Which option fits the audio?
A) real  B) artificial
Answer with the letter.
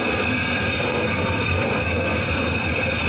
B